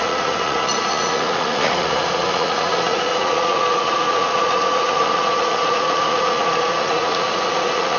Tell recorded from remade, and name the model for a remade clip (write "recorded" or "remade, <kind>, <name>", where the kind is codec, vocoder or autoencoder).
remade, vocoder, Vocos